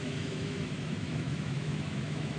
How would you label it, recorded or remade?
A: remade